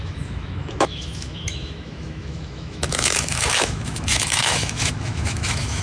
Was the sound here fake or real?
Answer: fake